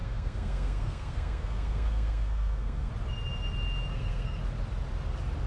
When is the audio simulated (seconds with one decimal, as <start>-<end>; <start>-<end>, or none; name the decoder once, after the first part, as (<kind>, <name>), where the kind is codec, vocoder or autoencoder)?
0.0-2.9 (codec, SNAC); 3.9-4.4